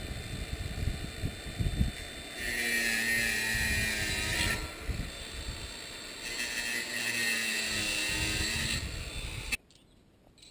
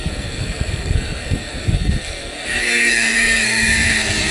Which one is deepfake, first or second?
second